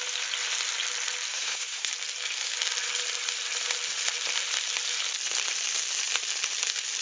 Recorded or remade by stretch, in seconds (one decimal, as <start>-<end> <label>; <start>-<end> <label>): 0.0-1.3 recorded; 1.3-1.9 remade; 1.9-7.0 recorded